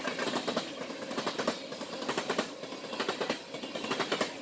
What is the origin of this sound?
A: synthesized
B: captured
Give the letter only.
B